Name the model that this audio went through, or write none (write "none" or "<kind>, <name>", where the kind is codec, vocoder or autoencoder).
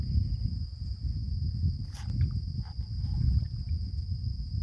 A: none